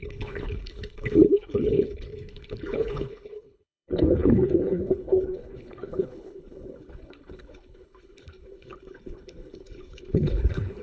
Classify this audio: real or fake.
fake